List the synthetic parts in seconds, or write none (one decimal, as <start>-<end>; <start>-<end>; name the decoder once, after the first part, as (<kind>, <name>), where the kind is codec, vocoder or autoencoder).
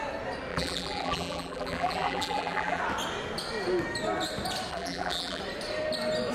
0.5-2.8 (vocoder, BigVGAN v2); 4.7-5.4